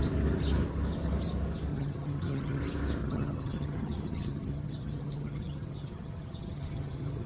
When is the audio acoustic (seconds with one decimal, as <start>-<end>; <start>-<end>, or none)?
0.0-1.7; 2.6-3.0